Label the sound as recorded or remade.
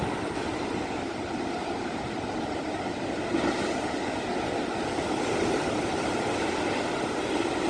recorded